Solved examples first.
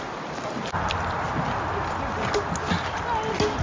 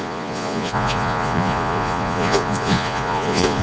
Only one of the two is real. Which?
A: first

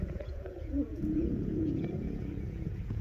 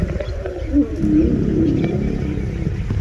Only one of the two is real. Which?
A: second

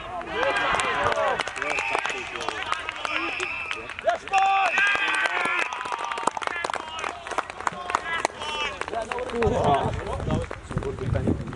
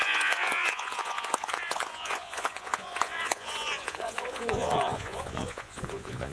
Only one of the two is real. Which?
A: first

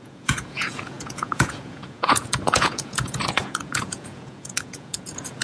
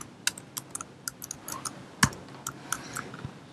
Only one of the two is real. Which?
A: second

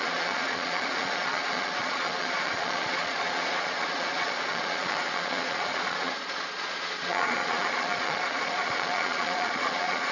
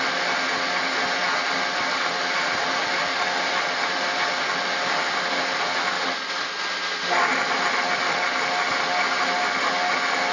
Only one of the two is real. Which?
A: second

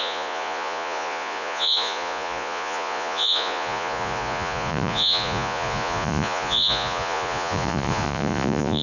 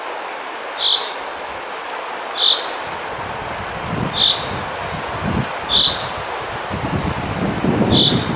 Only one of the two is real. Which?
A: second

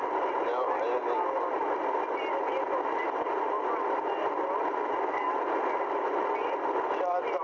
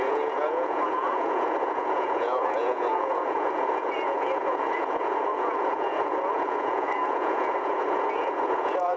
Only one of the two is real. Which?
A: first